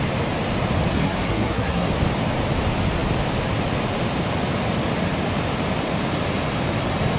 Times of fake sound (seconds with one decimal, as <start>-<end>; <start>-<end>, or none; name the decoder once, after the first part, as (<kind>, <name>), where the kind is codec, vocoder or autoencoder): 0.9-1.9 (codec, SNAC)